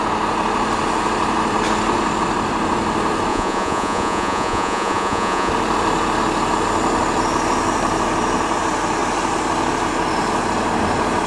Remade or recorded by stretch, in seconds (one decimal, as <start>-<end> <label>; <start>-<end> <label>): 0.0-3.3 recorded; 3.3-5.5 remade; 5.5-11.3 recorded